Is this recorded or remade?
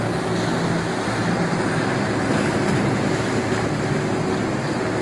recorded